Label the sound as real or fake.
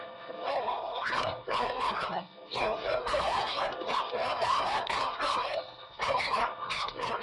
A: fake